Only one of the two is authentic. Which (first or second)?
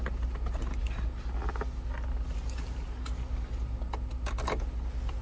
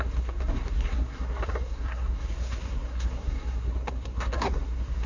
first